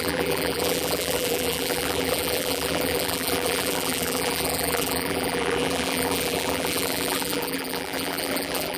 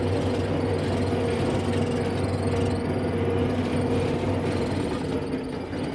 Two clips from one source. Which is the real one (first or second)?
second